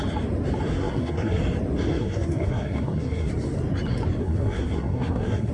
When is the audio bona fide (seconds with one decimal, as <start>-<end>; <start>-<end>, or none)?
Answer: 0.0-0.7; 1.4-1.9; 3.3-4.2

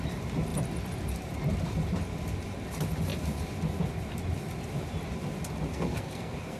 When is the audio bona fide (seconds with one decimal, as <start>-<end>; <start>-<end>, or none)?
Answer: 0.0-5.7

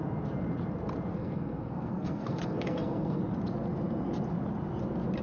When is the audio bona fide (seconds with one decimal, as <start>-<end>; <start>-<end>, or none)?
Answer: 0.0-1.1; 3.2-5.2

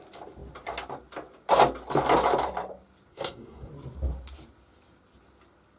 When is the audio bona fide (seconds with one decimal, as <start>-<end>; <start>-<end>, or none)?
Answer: 0.0-3.1; 3.7-5.8

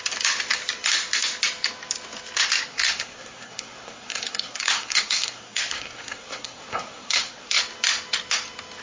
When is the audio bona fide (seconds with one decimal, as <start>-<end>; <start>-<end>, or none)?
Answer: 0.0-2.7; 7.6-8.8

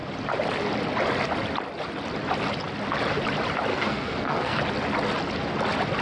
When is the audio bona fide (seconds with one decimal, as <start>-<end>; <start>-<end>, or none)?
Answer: 0.0-3.7; 4.6-6.0